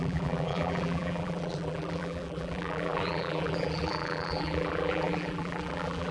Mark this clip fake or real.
fake